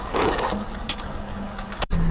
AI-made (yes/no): yes